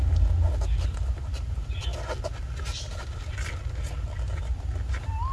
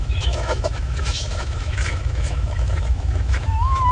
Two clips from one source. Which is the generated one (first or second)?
second